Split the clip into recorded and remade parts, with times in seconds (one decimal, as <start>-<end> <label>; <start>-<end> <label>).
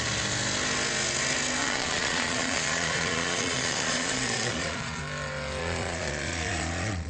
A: 0.0-1.6 recorded; 1.6-5.0 remade; 5.0-5.6 recorded; 5.6-7.1 remade